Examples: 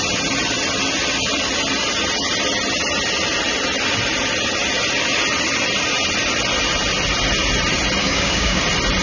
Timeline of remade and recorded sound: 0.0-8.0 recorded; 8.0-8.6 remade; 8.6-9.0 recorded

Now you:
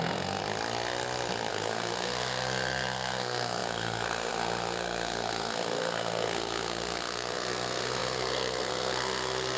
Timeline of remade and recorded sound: 0.0-0.4 remade; 0.4-1.5 recorded; 1.5-9.6 remade

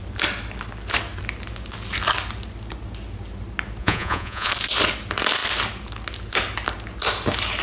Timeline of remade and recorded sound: 0.0-3.8 recorded; 3.8-4.5 remade; 4.5-7.6 recorded

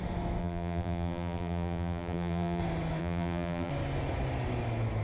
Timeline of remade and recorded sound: 0.0-0.4 recorded; 0.4-2.6 remade; 2.6-3.0 recorded; 3.0-3.7 remade; 3.7-5.0 recorded

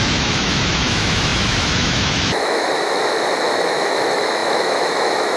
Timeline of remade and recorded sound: 0.0-5.4 remade

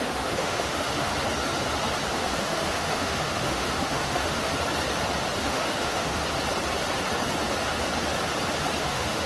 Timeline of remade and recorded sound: 0.0-1.1 remade; 1.1-2.2 recorded; 2.2-4.5 remade; 4.5-5.4 recorded; 5.4-6.2 remade; 6.2-8.8 recorded; 8.8-9.3 remade